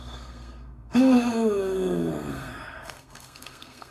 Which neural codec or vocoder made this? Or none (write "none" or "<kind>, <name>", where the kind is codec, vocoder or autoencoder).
codec, SNAC